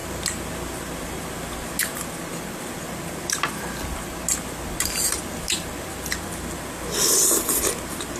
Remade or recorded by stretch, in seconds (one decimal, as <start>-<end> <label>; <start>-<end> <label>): 0.0-8.2 recorded